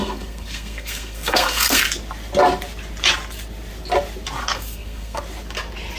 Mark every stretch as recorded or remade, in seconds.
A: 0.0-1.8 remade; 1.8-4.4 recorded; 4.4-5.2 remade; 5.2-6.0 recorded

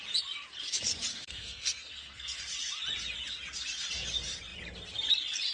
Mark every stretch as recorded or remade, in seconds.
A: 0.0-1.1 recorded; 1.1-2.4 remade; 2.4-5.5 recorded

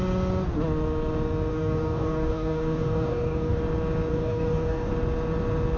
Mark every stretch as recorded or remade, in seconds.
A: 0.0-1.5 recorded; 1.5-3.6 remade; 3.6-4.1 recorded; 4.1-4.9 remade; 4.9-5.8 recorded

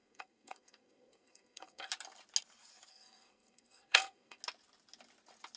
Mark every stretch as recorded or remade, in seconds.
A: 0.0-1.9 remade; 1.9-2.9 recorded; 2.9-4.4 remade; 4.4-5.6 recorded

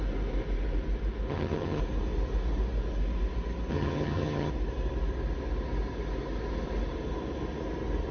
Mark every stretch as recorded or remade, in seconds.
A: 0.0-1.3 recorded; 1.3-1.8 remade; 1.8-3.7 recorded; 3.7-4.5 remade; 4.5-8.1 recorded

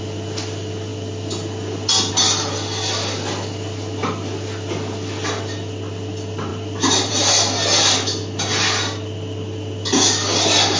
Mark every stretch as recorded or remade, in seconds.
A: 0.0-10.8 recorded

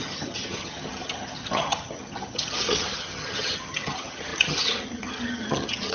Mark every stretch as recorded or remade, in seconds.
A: 0.0-5.9 remade

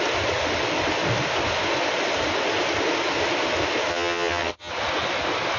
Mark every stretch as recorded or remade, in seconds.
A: 0.0-3.9 recorded; 3.9-4.7 remade; 4.7-5.6 recorded